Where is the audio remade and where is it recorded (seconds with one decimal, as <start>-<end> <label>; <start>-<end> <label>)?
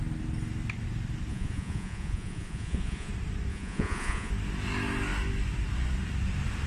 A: 0.0-1.3 recorded; 1.3-3.1 remade; 3.1-3.5 recorded; 3.5-4.3 remade; 4.3-6.7 recorded